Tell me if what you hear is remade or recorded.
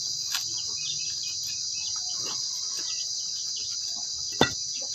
recorded